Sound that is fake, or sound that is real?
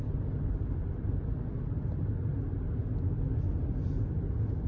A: real